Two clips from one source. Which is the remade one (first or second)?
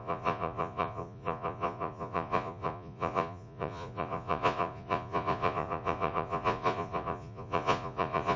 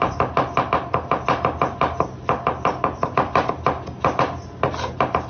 first